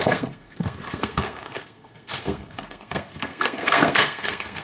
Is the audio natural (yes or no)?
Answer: no